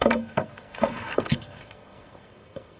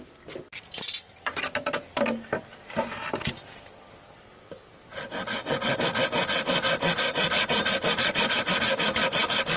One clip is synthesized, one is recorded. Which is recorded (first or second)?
second